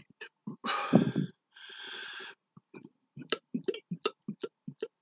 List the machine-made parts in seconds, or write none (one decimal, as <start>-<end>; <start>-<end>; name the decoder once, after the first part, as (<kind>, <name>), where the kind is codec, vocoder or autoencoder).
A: 0.4-1.3 (vocoder, BigVGAN v2); 2.0-3.9